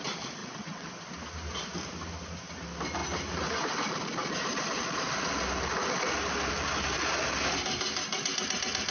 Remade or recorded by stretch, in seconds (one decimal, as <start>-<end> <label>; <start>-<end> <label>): 0.0-0.4 recorded; 0.4-0.9 remade; 0.9-8.9 recorded